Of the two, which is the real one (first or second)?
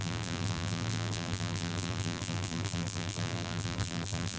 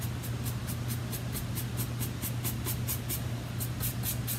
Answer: second